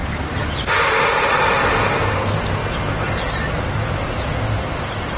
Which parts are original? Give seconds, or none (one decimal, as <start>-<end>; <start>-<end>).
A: 0.7-2.6; 4.3-5.2